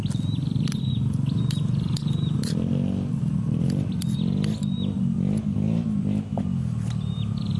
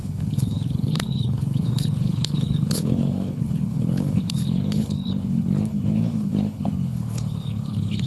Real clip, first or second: first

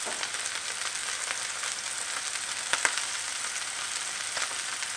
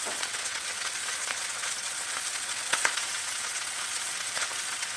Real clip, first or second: first